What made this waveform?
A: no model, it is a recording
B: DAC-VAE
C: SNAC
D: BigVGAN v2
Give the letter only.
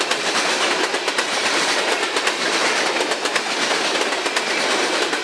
D